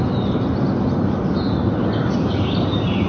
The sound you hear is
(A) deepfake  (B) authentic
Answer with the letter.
B